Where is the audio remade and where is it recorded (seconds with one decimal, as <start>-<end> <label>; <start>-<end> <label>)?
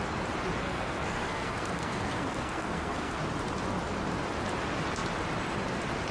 0.0-0.6 recorded; 0.6-3.2 remade; 3.2-6.1 recorded